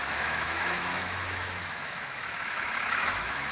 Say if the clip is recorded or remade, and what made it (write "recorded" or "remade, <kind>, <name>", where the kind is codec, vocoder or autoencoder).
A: remade, autoencoder, DAC-VAE